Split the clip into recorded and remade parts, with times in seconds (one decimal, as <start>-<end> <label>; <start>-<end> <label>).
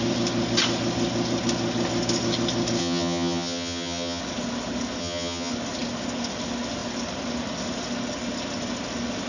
0.0-2.8 recorded; 2.8-4.2 remade; 4.2-5.0 recorded; 5.0-5.5 remade; 5.5-9.3 recorded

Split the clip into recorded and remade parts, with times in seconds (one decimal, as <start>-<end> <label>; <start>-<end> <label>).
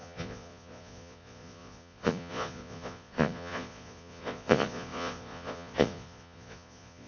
0.0-7.1 remade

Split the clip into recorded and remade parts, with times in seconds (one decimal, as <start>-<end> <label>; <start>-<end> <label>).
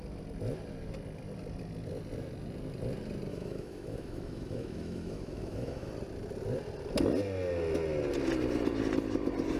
0.0-3.3 recorded; 3.3-5.9 remade; 5.9-9.6 recorded